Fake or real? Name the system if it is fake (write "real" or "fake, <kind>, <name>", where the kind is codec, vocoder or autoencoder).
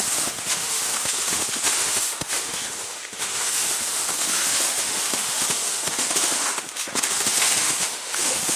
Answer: fake, autoencoder, DAC-VAE